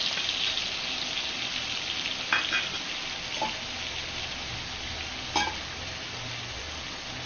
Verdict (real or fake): real